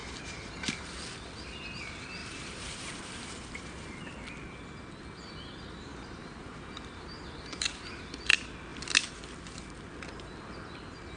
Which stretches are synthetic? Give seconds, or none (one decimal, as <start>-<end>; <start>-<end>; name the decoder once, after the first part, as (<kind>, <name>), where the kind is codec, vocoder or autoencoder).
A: 0.0-0.9 (vocoder, BigVGAN v2); 2.2-4.0; 5.9-7.9